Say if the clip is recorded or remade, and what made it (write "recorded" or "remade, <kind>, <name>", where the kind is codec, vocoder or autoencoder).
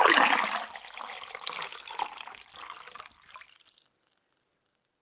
recorded